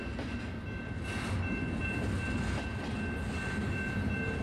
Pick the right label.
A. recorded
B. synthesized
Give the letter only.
A